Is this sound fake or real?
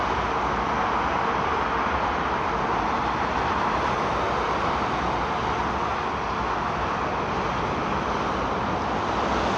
real